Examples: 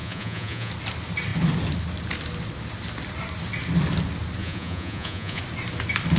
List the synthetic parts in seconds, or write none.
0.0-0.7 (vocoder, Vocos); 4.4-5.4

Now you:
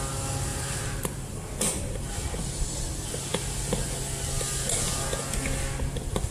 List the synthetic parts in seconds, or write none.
0.5-1.5 (vocoder, BigVGAN v2)

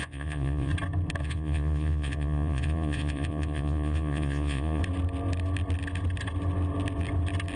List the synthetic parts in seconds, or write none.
0.0-0.7 (vocoder, Vocos); 1.2-4.8

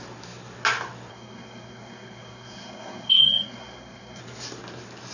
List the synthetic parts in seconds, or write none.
1.1-4.2 (codec, SNAC)